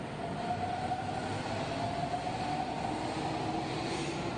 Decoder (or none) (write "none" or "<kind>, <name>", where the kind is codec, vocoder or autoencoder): none